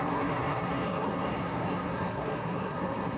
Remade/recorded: remade